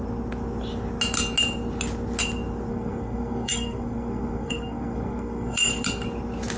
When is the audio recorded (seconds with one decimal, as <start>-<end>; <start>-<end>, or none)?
0.0-2.7; 5.7-6.6

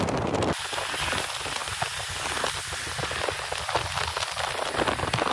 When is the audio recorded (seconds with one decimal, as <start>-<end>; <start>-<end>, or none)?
0.0-5.3

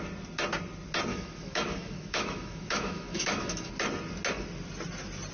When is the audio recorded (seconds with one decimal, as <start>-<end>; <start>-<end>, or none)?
0.0-1.1; 3.7-5.3

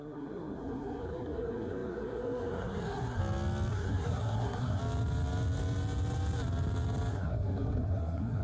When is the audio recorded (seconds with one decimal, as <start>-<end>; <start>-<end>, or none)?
3.2-3.7; 4.8-7.1

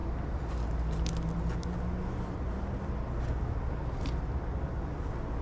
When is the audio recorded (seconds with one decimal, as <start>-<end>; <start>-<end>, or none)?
0.0-5.4

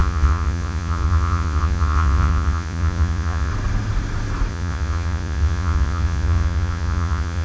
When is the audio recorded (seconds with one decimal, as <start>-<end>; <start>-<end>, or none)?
3.5-4.5